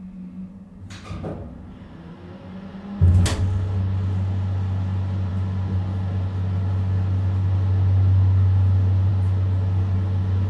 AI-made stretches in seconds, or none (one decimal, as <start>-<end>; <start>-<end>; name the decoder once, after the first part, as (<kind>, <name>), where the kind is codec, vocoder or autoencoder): none

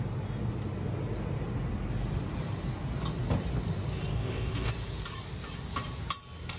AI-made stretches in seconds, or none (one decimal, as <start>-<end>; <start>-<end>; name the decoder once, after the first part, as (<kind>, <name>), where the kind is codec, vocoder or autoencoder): 4.1-4.7 (codec, DAC)

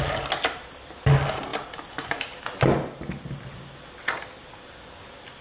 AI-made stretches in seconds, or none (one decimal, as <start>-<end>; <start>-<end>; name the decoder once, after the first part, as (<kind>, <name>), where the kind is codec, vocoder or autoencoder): none

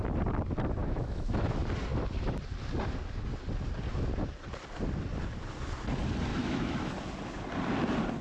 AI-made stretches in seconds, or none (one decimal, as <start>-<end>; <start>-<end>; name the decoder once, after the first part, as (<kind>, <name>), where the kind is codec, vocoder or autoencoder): 0.8-1.5 (autoencoder, DAC-VAE); 6.3-6.9

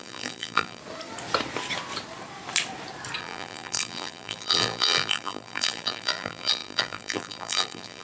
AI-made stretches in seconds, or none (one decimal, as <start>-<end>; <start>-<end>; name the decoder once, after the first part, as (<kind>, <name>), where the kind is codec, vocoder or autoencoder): 0.0-0.8 (vocoder, BigVGAN v2); 3.2-8.0

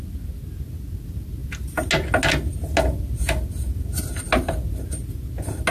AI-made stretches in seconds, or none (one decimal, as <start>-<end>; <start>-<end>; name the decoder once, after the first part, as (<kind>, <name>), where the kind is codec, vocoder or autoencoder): none

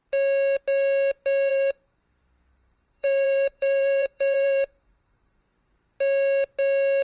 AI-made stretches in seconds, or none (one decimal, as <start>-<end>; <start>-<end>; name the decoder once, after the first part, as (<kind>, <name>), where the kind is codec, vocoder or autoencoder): 1.5-2.0 (vocoder, BigVGAN v2); 2.5-5.4

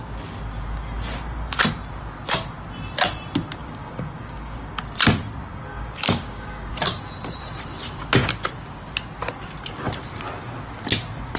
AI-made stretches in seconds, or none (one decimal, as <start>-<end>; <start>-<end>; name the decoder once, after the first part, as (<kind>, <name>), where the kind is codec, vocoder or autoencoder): 3.6-4.8 (codec, DAC); 5.5-6.7